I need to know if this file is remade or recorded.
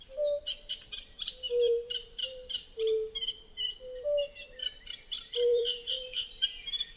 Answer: remade